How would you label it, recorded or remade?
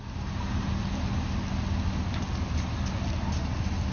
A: recorded